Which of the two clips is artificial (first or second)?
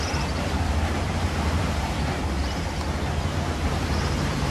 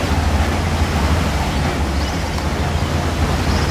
first